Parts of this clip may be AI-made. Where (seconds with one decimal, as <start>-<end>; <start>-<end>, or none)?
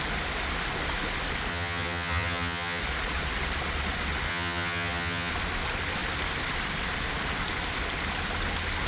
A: 1.5-2.8; 4.3-5.3